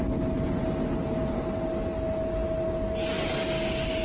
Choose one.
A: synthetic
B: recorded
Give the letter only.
B